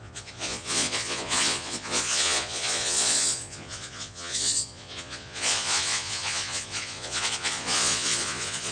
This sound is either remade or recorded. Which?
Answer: remade